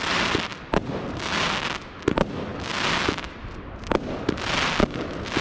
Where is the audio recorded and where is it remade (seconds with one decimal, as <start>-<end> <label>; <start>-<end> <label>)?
0.0-5.4 recorded